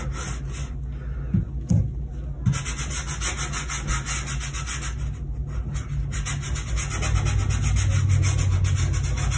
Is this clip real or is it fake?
real